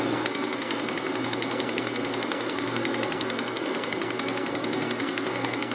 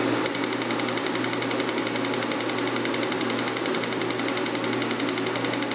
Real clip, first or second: second